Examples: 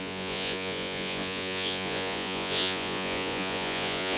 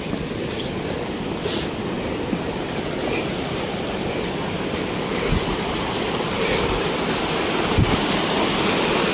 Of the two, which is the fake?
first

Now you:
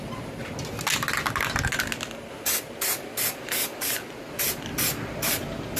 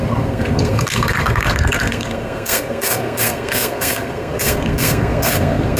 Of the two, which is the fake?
second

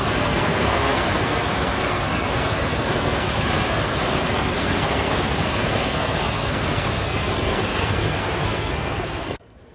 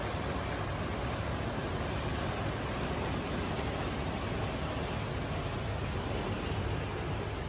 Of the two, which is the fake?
first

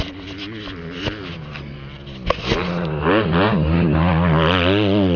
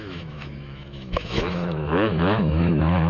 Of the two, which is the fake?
second